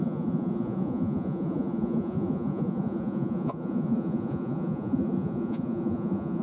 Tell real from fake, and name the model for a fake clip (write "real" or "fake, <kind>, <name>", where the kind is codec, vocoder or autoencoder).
fake, vocoder, Vocos